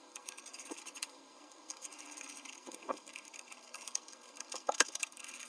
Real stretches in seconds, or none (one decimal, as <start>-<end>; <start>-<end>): none